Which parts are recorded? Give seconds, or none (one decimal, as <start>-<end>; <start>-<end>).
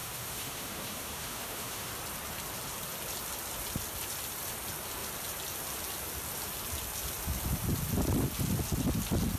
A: 1.9-9.4